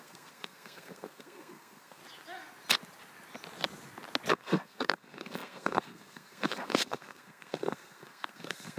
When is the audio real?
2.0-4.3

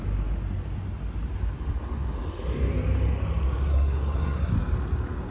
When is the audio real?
0.0-3.7; 4.5-5.3

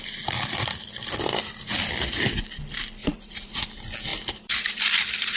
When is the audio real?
0.0-3.0; 3.6-4.1

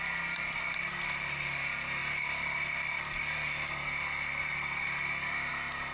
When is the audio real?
0.0-5.9

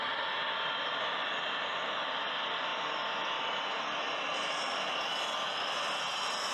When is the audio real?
0.0-6.5

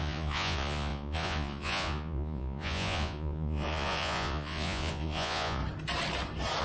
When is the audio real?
5.6-6.6